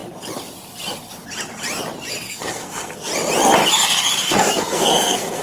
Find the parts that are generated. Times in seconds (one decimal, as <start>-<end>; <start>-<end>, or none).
2.3-3.1; 4.2-5.4